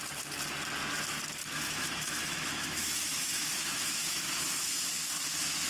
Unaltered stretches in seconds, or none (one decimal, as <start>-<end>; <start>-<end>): 0.0-1.4; 4.8-5.7